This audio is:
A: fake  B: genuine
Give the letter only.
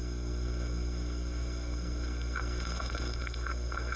A